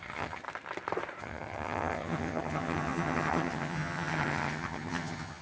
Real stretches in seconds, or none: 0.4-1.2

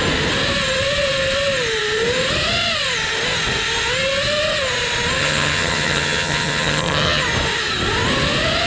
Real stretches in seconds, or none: 0.0-5.2; 7.2-8.7

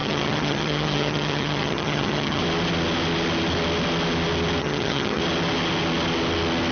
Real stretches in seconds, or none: 2.4-4.6; 5.2-6.7

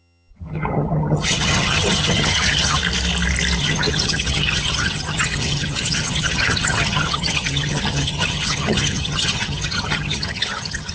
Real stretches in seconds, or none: 2.8-3.6

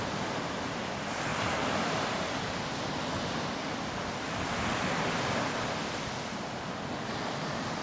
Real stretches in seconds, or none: 0.0-7.8